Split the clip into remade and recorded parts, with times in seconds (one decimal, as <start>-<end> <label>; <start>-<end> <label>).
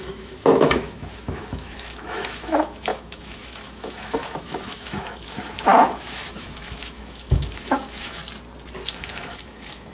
0.0-8.2 remade; 8.2-8.9 recorded; 8.9-9.9 remade